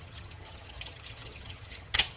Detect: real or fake fake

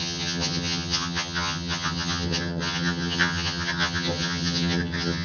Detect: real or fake fake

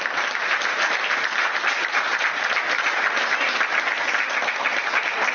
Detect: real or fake real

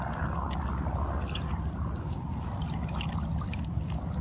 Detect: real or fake real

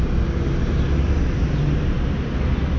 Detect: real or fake real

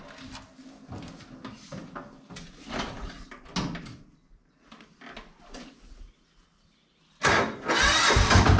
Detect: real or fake real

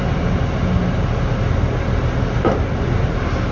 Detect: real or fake real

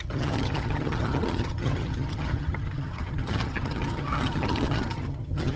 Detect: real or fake fake